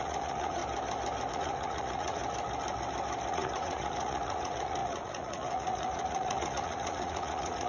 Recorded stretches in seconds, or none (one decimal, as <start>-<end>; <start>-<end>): 0.6-1.3; 2.2-3.3